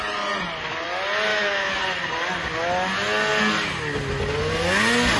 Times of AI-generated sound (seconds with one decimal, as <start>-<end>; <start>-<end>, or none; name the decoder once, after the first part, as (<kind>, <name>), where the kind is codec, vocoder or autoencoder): 1.3-1.8 (autoencoder, DAC-VAE)